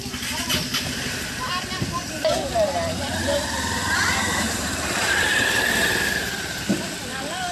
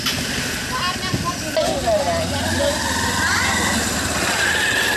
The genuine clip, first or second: second